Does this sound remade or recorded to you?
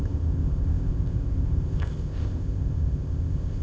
remade